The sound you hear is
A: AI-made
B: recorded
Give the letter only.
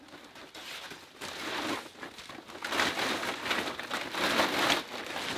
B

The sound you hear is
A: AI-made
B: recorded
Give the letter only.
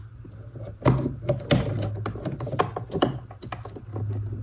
B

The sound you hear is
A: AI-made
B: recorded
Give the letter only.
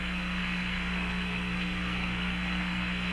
A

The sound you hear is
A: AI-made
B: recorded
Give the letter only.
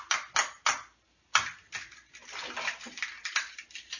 B